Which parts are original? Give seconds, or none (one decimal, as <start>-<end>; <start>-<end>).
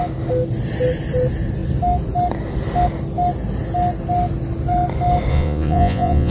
0.0-5.3